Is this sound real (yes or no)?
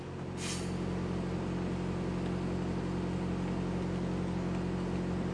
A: yes